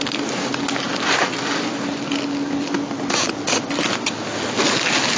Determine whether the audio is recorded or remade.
recorded